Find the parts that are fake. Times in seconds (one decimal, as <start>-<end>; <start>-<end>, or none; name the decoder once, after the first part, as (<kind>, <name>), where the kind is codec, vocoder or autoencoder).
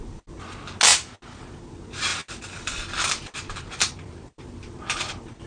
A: none